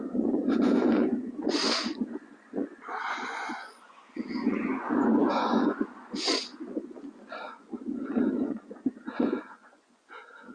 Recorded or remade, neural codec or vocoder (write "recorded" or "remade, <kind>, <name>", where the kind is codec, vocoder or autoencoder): remade, vocoder, Vocos